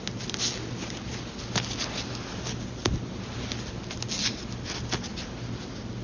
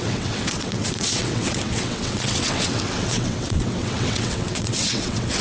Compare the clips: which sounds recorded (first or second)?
first